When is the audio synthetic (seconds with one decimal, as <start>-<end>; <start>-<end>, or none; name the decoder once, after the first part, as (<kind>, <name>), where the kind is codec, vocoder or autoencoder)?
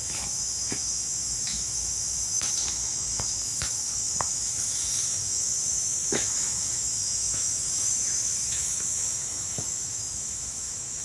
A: 0.0-11.0 (autoencoder, DAC-VAE)